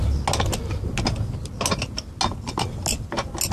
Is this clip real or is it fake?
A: real